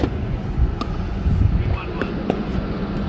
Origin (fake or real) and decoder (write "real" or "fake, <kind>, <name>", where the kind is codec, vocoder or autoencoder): fake, vocoder, Vocos